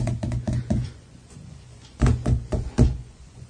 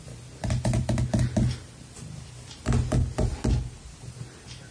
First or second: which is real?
second